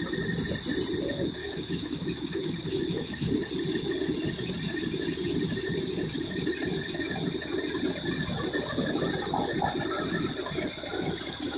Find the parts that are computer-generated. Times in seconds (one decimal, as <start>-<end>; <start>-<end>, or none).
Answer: 1.4-3.3